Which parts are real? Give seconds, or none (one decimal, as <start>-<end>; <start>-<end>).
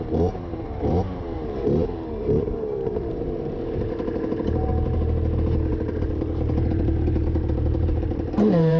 4.7-5.7